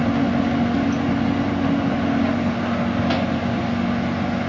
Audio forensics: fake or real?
real